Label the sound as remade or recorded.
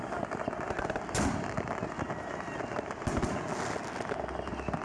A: recorded